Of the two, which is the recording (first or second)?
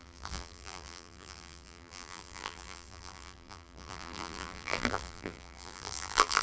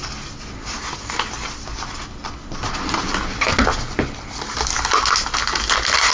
second